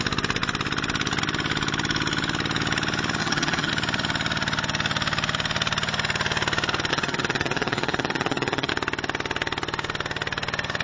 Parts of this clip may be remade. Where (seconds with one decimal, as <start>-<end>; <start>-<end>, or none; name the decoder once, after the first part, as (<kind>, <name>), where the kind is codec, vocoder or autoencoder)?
3.2-3.7 (vocoder, HiFi-GAN); 6.9-8.7